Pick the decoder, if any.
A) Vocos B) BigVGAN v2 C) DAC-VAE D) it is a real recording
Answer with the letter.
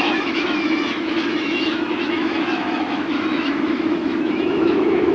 C